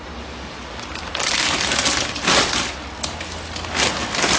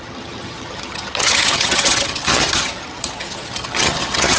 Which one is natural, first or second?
first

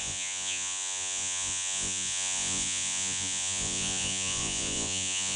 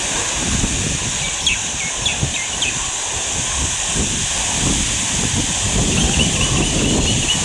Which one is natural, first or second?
second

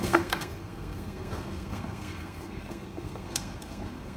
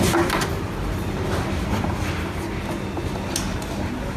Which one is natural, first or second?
second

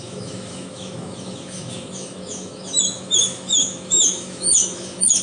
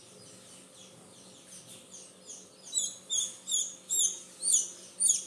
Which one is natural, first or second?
second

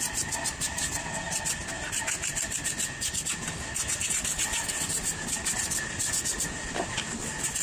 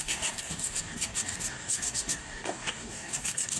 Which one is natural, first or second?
first